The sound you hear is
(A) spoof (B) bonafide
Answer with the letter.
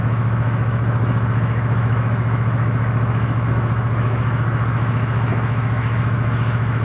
A